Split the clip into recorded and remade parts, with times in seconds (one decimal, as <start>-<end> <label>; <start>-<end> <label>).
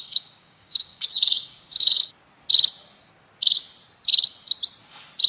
0.0-2.0 remade; 2.0-5.3 recorded